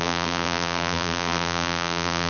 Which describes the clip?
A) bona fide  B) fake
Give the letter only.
B